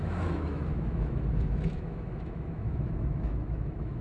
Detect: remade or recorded remade